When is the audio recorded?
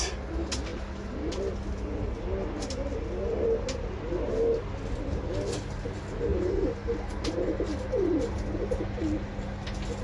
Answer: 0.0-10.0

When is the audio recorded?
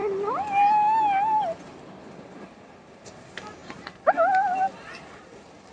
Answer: 0.0-3.6; 4.5-5.7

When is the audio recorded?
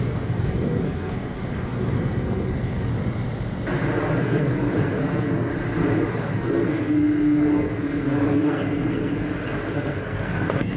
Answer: 2.9-4.2; 5.5-6.1